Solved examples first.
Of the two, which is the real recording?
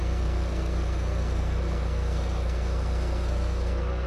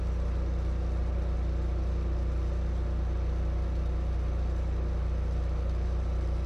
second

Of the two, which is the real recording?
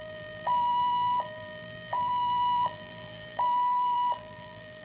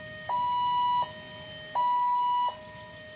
second